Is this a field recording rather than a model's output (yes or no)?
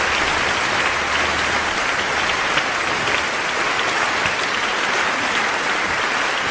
yes